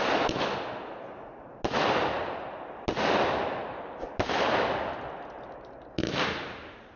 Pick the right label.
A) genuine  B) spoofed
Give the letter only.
A